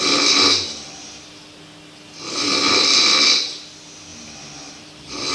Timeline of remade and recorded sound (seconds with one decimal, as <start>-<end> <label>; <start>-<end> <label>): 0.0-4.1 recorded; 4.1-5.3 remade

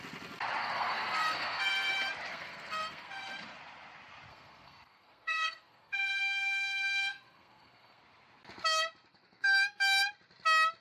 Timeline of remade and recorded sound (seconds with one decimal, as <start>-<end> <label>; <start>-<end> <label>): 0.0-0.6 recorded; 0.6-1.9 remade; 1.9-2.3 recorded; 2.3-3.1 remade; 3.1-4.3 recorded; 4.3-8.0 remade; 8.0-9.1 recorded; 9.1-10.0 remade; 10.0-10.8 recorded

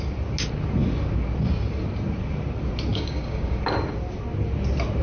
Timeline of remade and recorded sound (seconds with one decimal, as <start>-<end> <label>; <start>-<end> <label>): 0.0-2.9 recorded; 2.9-3.6 remade; 3.6-5.0 recorded